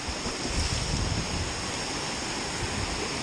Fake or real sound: real